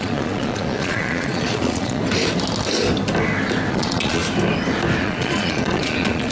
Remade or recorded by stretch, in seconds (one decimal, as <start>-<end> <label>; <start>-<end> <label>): 0.0-2.0 remade; 2.0-3.7 recorded; 3.7-4.2 remade; 4.2-5.0 recorded; 5.0-6.3 remade